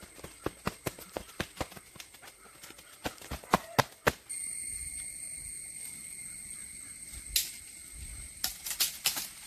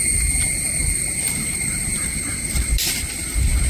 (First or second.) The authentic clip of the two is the first